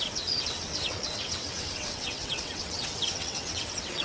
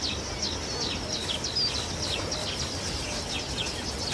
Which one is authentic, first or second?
second